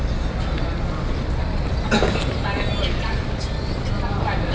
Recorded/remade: recorded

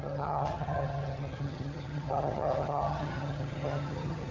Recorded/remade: remade